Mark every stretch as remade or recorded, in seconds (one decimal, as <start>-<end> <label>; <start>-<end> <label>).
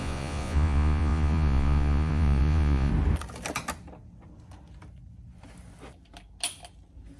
0.0-2.9 remade; 2.9-7.2 recorded